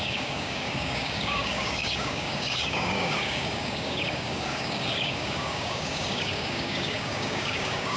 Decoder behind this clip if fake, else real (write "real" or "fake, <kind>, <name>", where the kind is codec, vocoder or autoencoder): fake, codec, DAC